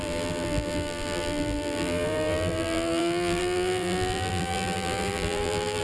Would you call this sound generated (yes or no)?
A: yes